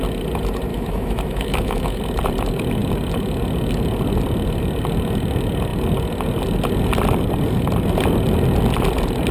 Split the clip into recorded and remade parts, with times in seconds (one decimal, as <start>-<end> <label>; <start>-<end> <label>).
0.0-0.7 recorded; 0.7-2.0 remade; 2.0-9.3 recorded